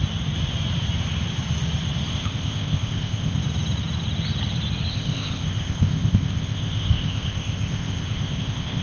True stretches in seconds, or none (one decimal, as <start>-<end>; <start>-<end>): 0.0-2.1; 3.4-4.9